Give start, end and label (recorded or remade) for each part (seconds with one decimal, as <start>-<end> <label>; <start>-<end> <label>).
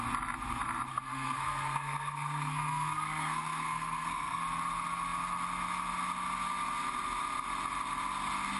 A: 0.0-0.9 recorded; 0.9-4.4 remade; 4.4-8.6 recorded